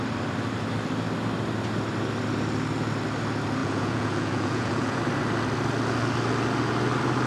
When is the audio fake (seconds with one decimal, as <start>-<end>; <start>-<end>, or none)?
3.6-5.0